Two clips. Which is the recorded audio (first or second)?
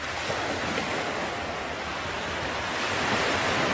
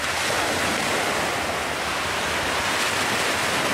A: second